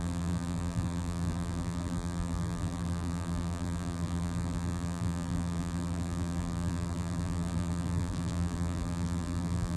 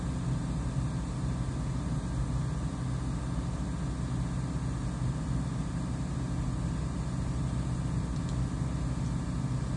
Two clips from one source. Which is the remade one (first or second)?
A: first